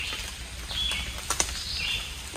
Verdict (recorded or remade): recorded